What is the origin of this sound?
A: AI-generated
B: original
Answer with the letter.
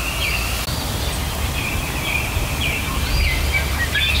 B